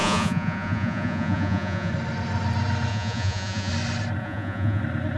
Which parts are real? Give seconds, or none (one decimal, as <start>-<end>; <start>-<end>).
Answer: 1.9-2.9; 3.7-4.2; 4.8-5.2